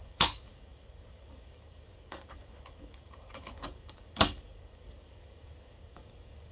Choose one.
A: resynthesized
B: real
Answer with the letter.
A